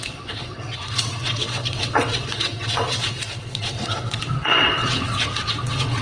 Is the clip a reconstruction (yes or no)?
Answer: yes